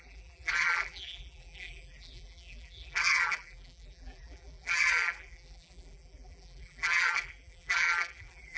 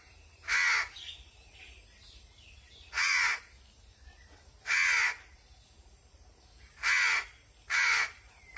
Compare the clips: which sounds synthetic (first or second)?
first